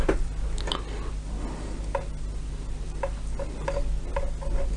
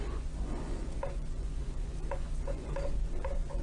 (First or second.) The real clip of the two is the first